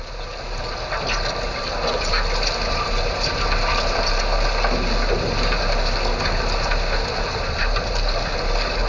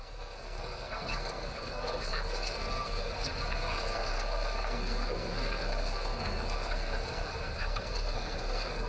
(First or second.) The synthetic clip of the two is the second